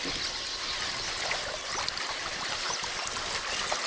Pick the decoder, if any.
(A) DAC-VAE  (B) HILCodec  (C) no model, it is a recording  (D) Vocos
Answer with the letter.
C